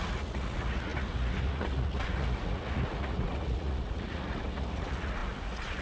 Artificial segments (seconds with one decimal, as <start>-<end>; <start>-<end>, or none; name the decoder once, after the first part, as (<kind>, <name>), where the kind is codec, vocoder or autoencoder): 0.0-5.8 (vocoder, Vocos)